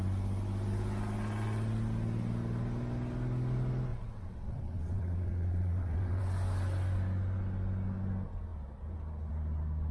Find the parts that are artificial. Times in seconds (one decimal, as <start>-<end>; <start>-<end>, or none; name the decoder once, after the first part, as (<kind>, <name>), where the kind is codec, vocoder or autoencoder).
3.9-6.2 (vocoder, WaveNeXt)